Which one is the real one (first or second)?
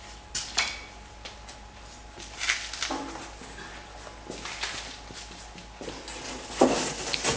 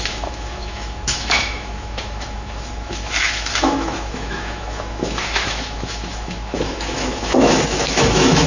first